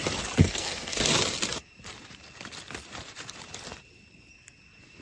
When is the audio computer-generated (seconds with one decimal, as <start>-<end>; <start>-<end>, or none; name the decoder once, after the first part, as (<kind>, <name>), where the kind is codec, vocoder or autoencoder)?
0.4-1.0 (codec, SNAC)